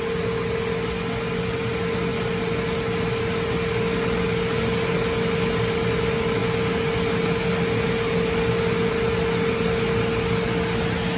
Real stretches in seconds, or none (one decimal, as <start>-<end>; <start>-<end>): 0.0-11.2